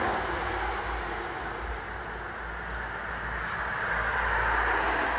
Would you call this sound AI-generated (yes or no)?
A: no